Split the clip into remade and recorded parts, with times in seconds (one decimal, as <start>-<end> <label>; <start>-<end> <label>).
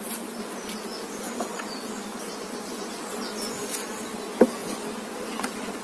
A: 0.0-0.9 recorded; 0.9-3.9 remade; 3.9-4.6 recorded; 4.6-5.8 remade